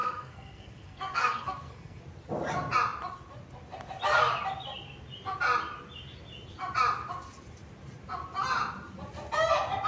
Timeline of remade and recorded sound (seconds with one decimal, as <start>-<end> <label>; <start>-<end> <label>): 0.0-2.0 remade; 2.0-9.9 recorded